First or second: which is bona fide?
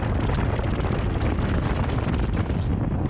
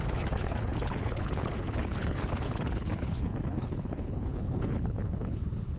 first